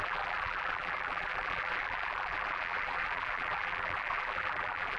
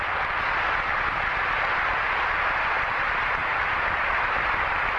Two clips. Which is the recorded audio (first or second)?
second